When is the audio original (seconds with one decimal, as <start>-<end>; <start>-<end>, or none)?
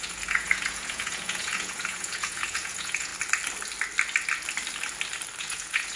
3.1-5.4